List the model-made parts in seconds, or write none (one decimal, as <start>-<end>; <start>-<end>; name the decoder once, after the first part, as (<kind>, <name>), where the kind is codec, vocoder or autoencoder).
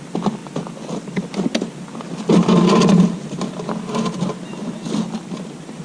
none